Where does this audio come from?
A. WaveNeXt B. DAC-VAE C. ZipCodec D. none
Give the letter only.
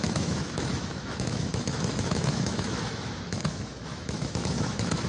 B